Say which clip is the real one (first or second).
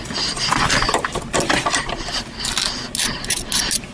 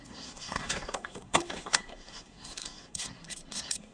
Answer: first